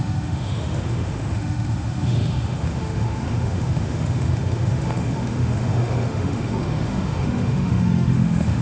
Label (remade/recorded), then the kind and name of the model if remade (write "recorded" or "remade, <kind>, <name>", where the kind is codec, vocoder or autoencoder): remade, autoencoder, DAC-VAE